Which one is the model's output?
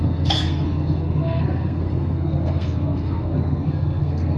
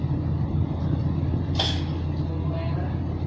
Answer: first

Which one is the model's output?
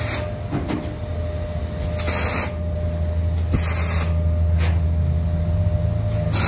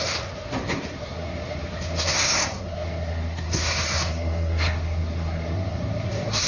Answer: second